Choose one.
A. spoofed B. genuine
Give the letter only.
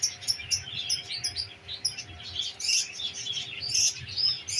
B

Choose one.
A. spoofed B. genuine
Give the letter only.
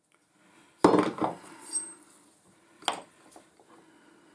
B